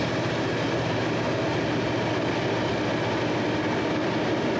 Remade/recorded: recorded